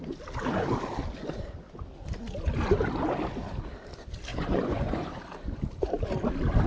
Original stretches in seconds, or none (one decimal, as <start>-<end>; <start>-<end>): 0.0-4.3; 5.1-6.7